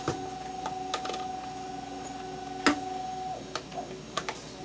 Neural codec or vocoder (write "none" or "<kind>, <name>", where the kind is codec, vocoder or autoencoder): none